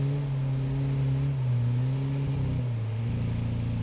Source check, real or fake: real